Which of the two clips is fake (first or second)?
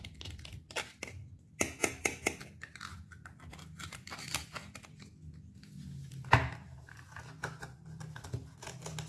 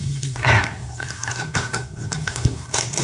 second